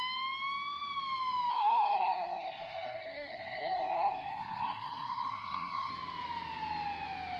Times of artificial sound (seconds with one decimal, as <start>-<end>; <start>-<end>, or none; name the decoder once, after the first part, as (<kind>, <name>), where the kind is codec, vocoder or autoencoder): 1.5-5.9 (codec, SNAC)